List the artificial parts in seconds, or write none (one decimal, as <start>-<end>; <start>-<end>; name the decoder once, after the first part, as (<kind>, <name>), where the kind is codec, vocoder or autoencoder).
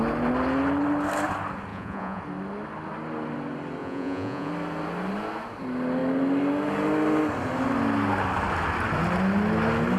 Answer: 1.7-2.2 (vocoder, Vocos); 3.8-4.5